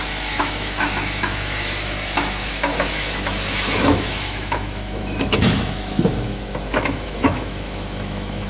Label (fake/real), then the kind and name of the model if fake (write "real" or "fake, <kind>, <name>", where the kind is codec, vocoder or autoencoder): fake, autoencoder, DAC-VAE